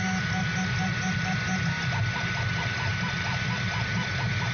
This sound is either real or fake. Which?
real